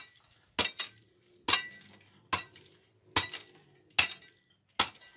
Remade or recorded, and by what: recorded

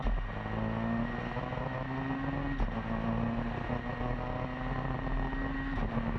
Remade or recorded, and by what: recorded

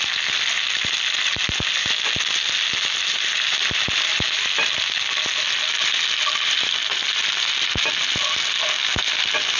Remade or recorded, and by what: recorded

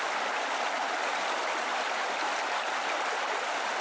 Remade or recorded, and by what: recorded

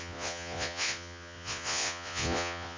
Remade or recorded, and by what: remade, vocoder, Vocos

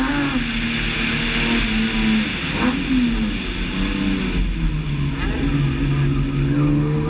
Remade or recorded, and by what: recorded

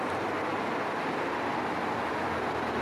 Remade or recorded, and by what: recorded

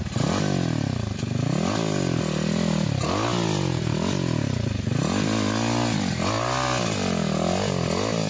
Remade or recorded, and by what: recorded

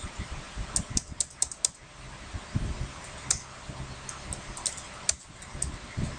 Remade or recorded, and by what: recorded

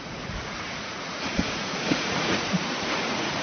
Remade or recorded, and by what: remade, vocoder, Vocos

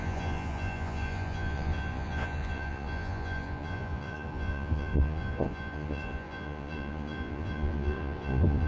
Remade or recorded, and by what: remade, vocoder, Vocos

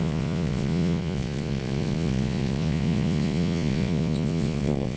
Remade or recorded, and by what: remade, vocoder, Vocos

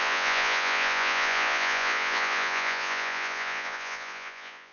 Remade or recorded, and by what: remade, vocoder, Vocos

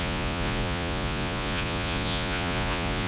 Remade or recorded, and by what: remade, vocoder, Vocos